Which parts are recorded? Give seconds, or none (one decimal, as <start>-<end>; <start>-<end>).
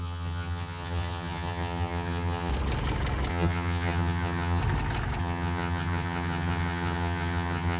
2.5-3.3; 4.6-5.2